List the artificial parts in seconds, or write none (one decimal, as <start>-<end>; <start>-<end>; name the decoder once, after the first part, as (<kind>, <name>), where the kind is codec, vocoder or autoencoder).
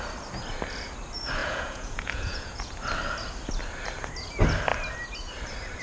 1.4-2.7 (vocoder, Vocos)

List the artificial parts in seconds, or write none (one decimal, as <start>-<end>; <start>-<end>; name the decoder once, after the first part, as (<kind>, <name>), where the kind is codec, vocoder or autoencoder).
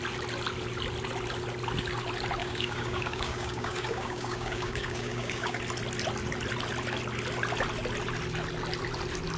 2.4-5.6 (codec, DAC)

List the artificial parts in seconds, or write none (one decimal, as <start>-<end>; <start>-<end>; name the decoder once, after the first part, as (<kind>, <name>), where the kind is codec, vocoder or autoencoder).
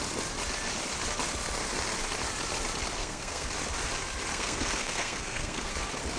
3.0-3.5 (codec, SNAC); 4.3-5.7